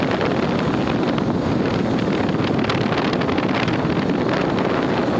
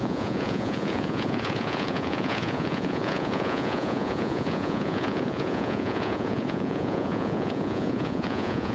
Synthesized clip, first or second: second